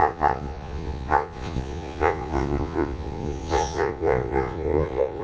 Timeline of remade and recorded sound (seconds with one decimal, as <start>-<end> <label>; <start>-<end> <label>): 0.0-5.2 remade